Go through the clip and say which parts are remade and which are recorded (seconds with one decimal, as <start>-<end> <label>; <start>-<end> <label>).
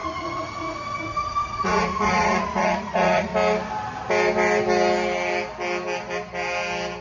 0.0-3.3 remade; 3.3-7.0 recorded